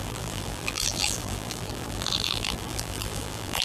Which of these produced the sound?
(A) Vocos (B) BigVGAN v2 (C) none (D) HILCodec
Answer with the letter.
B